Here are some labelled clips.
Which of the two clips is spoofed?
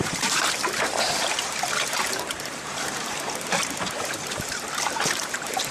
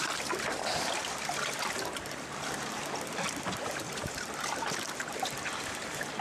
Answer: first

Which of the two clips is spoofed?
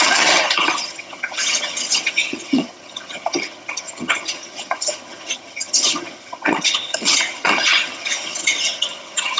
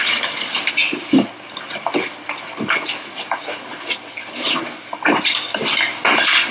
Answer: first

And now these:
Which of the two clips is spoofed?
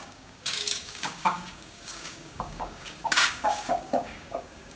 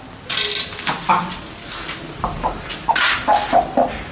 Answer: first